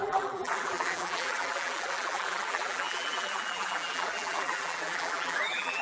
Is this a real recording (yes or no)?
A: no